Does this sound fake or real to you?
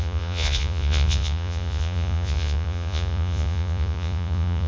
fake